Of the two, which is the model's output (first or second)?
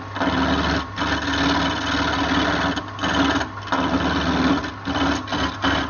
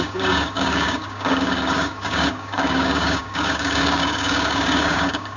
second